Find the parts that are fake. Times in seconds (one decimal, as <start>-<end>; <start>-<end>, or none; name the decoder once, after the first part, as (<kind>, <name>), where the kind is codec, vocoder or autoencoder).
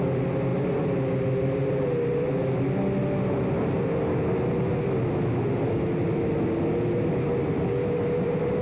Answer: none